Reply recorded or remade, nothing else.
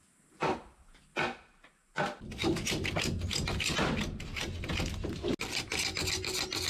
recorded